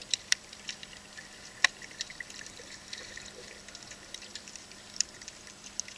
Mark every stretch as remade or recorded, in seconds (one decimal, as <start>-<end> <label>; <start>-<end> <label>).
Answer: 0.0-3.6 remade; 3.6-4.3 recorded; 4.3-5.4 remade; 5.4-6.0 recorded